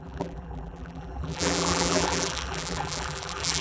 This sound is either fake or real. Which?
fake